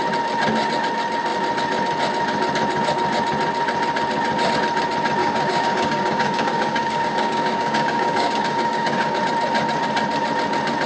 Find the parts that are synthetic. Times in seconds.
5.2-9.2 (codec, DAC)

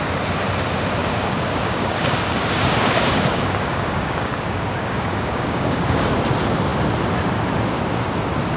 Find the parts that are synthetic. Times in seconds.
1.0-6.2 (codec, DAC)